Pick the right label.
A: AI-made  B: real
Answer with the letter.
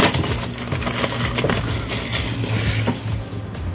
B